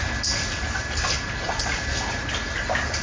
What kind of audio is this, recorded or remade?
recorded